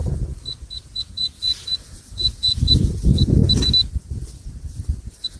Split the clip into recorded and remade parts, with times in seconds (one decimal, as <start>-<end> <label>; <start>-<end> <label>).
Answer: 0.0-3.4 remade; 3.4-4.9 recorded; 4.9-5.4 remade